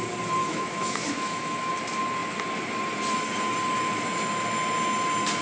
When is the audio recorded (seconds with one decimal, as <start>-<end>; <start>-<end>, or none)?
0.0-0.4; 1.7-5.4